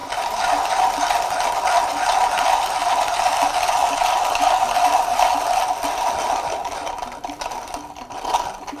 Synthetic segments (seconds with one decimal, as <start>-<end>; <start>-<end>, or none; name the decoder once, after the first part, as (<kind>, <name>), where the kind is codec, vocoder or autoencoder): none